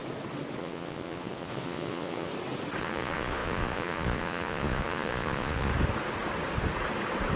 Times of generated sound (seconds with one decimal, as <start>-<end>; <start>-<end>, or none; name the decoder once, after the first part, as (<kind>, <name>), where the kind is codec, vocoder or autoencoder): 0.6-2.3 (vocoder, Vocos); 2.8-5.7